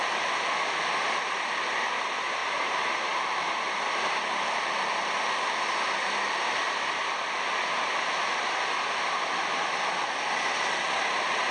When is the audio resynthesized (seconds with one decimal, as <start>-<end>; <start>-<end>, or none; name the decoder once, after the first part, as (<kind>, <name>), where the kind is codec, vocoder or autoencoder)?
2.4-4.0 (vocoder, BigVGAN v2)